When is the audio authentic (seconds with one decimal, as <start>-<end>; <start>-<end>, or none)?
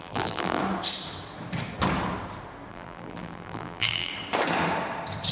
0.6-2.7; 4.1-5.3